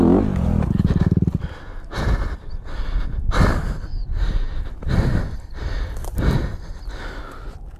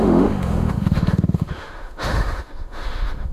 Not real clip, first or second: second